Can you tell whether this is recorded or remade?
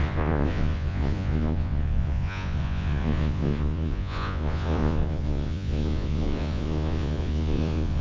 remade